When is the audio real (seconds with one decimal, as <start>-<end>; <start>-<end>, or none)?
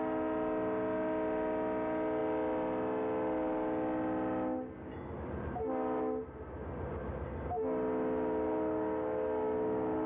0.0-10.1